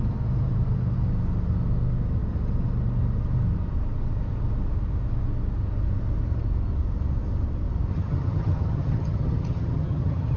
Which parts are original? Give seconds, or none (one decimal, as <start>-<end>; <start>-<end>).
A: 0.0-7.9

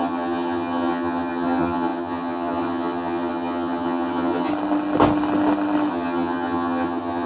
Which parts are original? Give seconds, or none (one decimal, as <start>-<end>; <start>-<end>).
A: 4.5-5.9